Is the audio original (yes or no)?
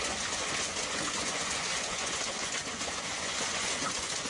no